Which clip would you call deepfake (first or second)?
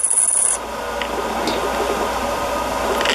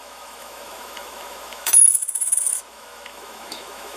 second